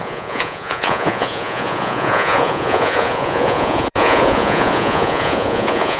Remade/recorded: remade